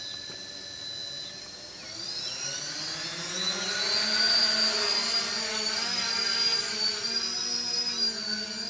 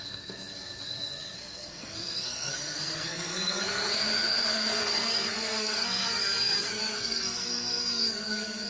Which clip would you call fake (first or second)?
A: second